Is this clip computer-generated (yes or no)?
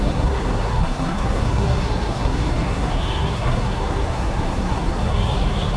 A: yes